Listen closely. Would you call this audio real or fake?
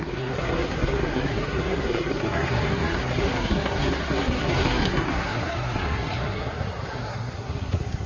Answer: fake